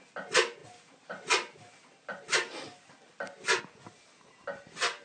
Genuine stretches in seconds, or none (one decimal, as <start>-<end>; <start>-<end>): 0.0-5.0

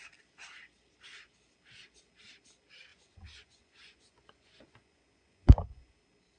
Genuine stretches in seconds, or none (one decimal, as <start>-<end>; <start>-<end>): 0.0-2.9; 6.0-6.4

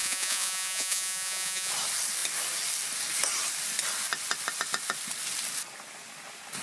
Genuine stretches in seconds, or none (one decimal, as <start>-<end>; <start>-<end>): 1.7-6.6